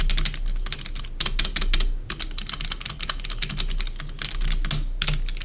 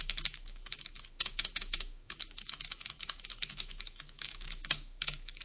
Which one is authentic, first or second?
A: first